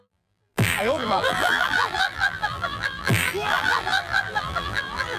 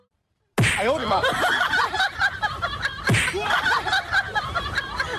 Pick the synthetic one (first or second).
first